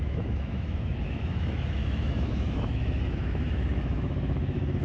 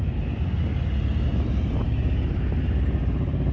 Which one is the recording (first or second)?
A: second